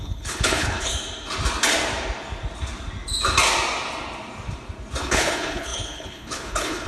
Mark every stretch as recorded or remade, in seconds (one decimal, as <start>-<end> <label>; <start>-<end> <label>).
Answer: 0.0-0.9 remade; 0.9-5.0 recorded; 5.0-6.9 remade